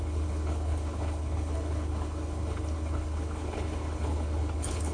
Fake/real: fake